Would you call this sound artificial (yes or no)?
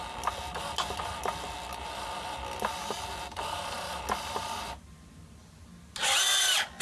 no